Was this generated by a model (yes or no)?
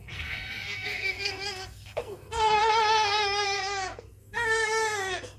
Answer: yes